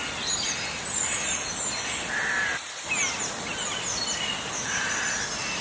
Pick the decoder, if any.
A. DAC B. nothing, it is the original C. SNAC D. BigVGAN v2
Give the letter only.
B